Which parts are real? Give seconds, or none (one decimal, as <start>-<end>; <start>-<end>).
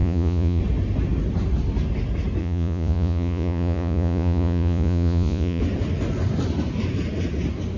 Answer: 0.6-2.4; 5.6-7.8